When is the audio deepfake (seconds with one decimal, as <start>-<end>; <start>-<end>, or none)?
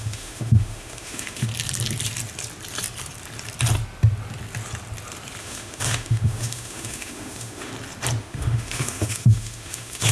0.0-1.5; 5.4-7.7; 8.2-10.1